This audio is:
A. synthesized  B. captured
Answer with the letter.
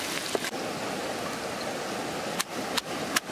B